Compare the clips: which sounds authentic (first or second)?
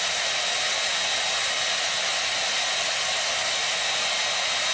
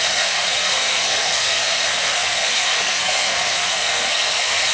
first